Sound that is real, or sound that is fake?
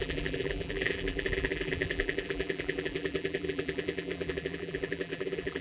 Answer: fake